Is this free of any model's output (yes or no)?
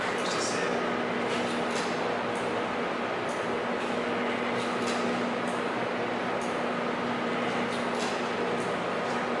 yes